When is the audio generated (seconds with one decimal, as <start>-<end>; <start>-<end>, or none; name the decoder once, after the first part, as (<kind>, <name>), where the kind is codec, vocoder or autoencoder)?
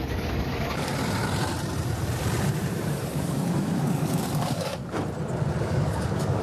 0.0-0.9 (codec, DAC); 3.1-4.8; 5.6-6.4